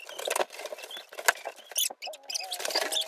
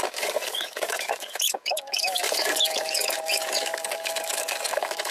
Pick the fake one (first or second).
second